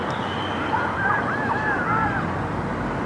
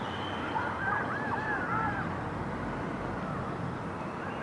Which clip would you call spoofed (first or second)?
second